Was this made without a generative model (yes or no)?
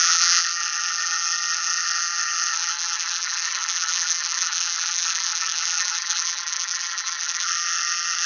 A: no